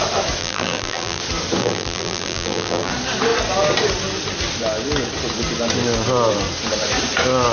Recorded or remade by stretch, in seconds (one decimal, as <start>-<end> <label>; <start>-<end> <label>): 0.0-0.4 recorded; 0.4-1.2 remade; 1.2-1.6 recorded; 1.6-2.9 remade; 2.9-7.5 recorded